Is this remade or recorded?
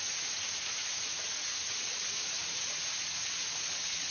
remade